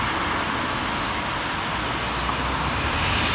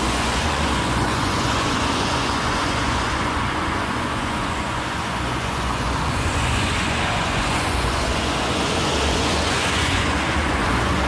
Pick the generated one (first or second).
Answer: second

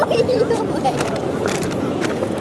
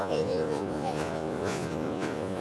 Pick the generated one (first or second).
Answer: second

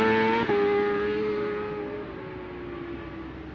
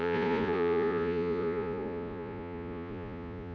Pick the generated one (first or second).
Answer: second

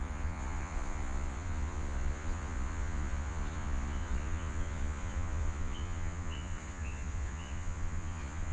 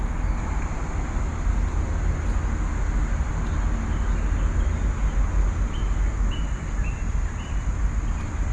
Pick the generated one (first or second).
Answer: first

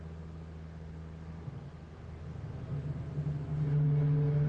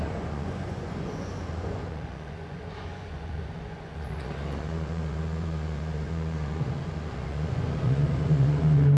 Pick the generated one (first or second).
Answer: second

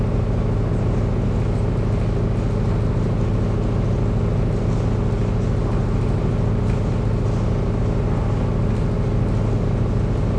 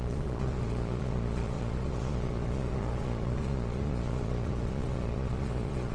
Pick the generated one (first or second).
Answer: second